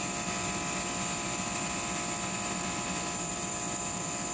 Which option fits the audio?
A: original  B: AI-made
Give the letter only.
A